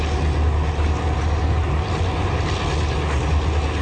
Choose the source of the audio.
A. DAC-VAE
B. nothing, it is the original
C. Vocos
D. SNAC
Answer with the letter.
B